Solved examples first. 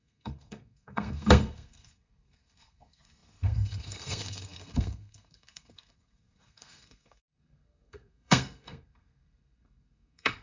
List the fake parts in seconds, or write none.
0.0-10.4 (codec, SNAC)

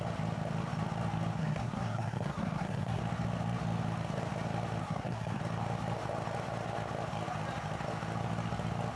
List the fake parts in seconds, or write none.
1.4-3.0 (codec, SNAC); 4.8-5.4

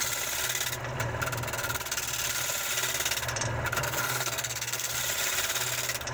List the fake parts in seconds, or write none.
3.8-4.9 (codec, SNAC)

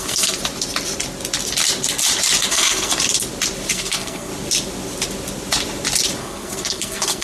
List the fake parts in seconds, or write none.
0.0-0.4 (codec, SNAC); 2.5-2.9; 3.7-4.3; 6.2-7.2